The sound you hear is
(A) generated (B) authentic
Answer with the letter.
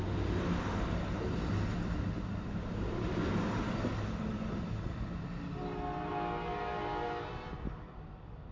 B